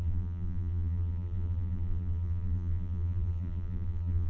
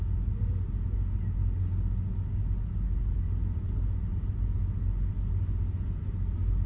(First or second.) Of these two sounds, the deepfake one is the first